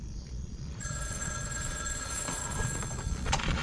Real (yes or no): no